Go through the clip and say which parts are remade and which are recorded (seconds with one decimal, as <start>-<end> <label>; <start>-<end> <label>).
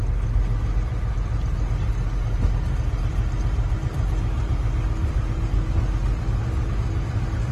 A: 0.0-7.5 recorded